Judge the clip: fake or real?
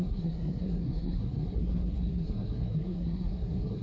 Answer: fake